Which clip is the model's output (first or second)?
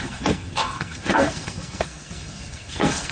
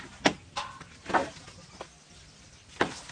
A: first